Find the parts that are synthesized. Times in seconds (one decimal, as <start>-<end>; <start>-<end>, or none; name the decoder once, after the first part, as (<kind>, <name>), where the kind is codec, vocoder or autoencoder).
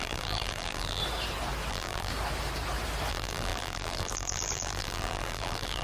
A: 0.0-1.0 (vocoder, BigVGAN v2); 1.7-2.1; 3.1-5.8